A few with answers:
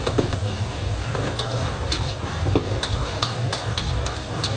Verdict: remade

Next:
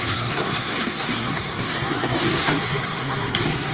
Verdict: remade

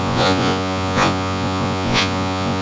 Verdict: remade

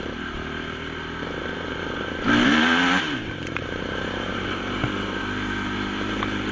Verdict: remade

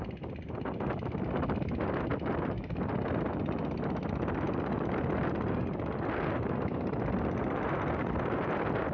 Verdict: recorded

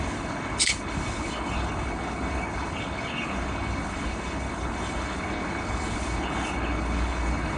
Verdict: remade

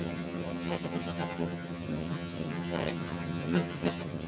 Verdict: remade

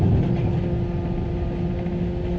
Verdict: recorded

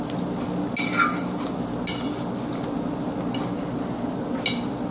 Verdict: recorded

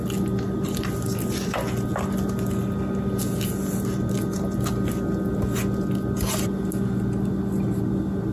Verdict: recorded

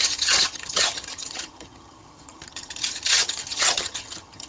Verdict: remade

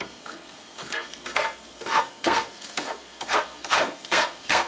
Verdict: remade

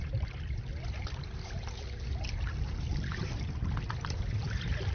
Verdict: recorded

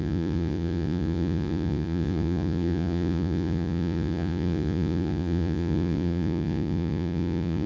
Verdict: remade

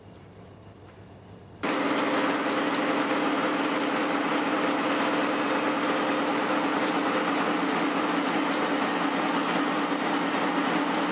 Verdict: recorded